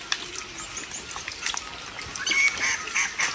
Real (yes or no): yes